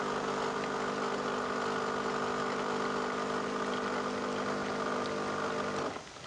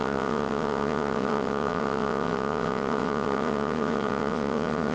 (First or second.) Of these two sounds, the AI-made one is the second